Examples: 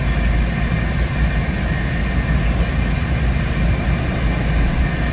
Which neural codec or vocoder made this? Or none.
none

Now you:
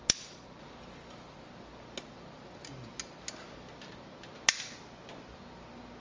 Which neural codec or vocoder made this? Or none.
none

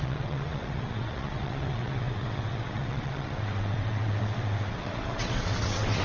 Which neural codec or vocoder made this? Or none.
vocoder, WaveNeXt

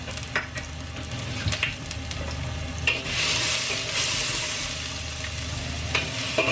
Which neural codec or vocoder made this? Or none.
none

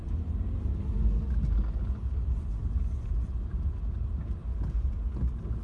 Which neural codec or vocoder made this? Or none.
none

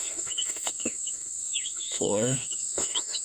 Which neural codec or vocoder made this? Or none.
autoencoder, DAC-VAE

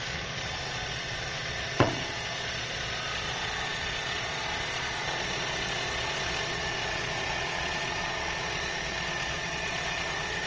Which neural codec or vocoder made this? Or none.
vocoder, Vocos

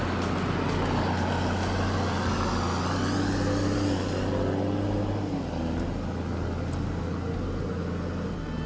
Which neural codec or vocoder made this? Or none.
none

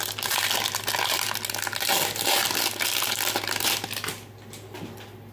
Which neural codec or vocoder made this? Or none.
none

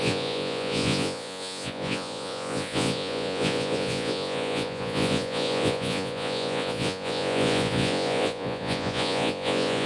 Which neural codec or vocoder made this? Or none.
vocoder, Vocos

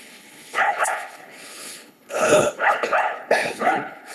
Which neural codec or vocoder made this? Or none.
codec, HILCodec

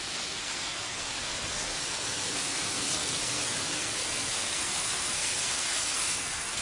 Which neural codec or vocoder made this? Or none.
codec, SNAC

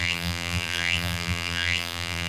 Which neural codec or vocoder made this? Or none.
vocoder, BigVGAN v2